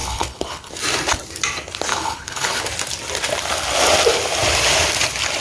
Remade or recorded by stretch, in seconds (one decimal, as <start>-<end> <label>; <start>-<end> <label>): 0.0-0.7 remade; 0.7-1.9 recorded; 1.9-2.6 remade; 2.6-5.4 recorded